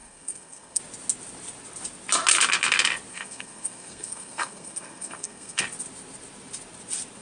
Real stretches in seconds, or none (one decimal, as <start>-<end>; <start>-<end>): 0.8-3.1; 5.6-7.2